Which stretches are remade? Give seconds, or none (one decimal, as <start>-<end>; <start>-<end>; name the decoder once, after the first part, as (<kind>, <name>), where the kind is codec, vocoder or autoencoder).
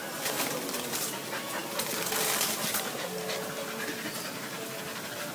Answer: none